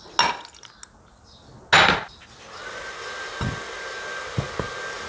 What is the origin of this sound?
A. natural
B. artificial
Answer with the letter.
A